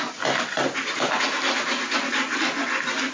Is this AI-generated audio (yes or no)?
no